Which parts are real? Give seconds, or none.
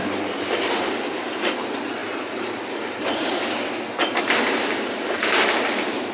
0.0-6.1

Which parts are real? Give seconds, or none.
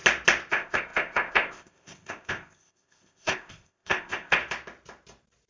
0.0-0.5; 4.4-5.5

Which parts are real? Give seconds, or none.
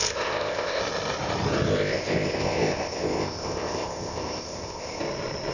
0.8-1.7; 5.0-5.5